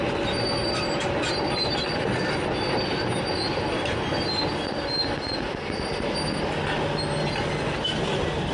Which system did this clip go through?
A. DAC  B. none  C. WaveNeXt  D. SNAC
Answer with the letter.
B